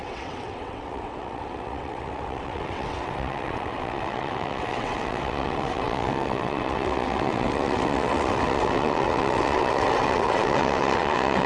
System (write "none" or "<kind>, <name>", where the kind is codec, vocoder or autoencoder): vocoder, WaveNeXt